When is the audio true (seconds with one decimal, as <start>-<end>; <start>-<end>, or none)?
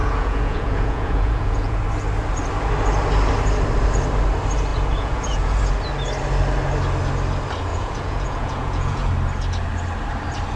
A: 1.8-4.7; 5.6-7.7; 9.1-10.6